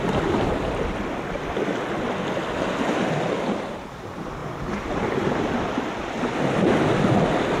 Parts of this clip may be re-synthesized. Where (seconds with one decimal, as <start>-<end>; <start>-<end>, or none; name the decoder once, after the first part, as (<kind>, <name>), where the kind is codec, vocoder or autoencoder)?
4.4-5.0 (vocoder, BigVGAN v2)